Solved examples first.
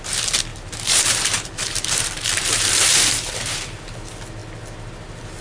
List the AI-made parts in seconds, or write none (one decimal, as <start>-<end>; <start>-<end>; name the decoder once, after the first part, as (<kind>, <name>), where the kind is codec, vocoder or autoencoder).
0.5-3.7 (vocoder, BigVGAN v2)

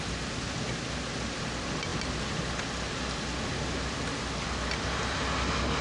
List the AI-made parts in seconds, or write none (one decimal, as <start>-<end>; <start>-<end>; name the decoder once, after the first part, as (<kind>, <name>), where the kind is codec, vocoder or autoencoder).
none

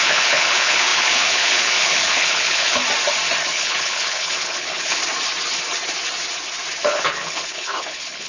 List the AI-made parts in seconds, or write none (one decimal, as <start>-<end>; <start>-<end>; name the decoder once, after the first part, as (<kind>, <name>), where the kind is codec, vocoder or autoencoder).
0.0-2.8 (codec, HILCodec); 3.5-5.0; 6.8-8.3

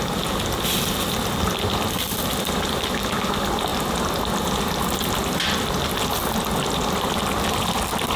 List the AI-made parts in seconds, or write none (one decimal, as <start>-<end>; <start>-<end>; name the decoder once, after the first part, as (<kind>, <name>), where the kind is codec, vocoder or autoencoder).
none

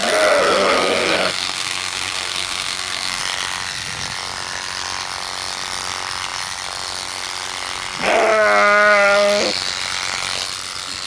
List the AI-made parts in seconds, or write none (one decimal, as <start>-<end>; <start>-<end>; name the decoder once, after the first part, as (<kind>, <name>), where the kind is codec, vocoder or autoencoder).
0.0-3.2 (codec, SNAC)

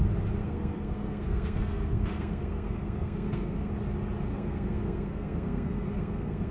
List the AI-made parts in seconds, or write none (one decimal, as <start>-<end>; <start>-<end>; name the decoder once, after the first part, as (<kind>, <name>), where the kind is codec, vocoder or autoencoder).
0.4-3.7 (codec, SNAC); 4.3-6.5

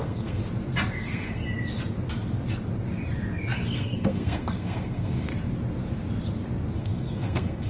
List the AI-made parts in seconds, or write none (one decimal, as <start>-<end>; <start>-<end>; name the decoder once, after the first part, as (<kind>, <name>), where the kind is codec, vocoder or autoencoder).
0.0-0.4 (codec, SNAC); 0.9-1.4; 3.7-5.3; 6.8-7.7

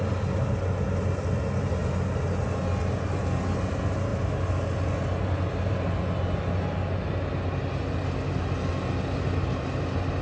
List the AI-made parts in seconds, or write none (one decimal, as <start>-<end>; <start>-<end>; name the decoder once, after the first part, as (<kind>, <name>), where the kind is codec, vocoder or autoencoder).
none